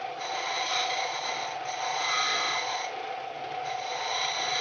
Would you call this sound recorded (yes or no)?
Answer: yes